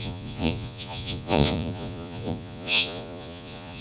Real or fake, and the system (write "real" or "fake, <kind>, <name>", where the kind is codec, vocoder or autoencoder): fake, vocoder, Vocos